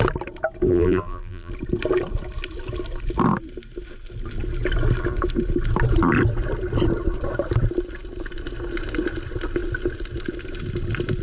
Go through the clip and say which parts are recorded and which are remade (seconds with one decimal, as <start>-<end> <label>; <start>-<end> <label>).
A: 0.0-0.7 recorded; 0.7-1.5 remade; 1.5-11.2 recorded